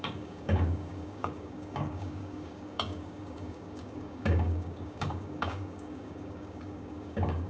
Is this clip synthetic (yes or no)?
yes